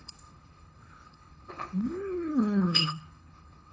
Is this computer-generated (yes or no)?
yes